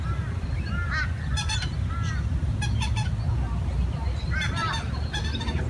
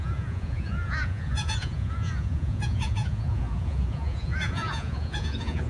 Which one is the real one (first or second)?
first